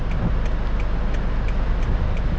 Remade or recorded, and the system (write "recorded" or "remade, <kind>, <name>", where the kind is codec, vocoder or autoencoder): recorded